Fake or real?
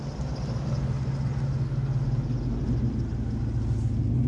real